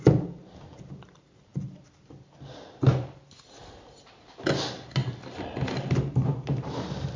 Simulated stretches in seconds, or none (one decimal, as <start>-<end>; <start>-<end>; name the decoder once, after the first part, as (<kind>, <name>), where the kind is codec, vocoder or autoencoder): none